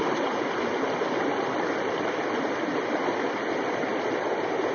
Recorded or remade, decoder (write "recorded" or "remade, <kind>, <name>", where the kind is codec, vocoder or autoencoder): recorded